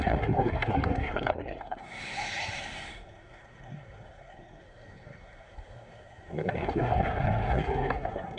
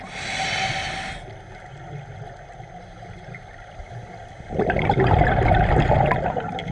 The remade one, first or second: first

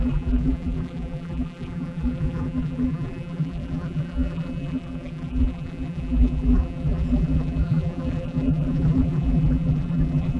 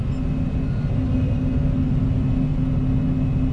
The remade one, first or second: first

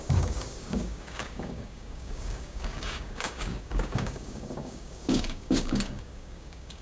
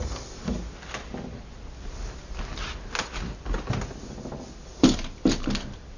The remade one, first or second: first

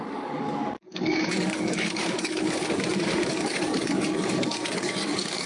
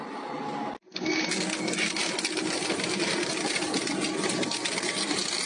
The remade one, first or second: first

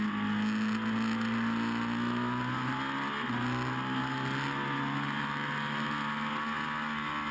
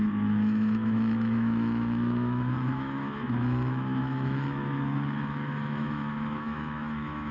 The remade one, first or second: second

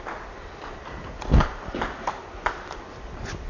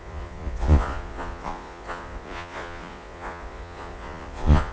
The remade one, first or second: second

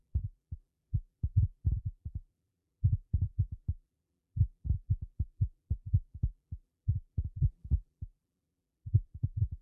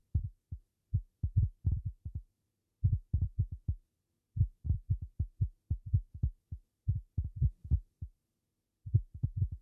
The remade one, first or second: first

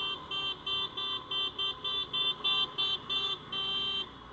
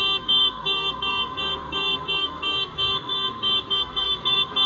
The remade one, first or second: second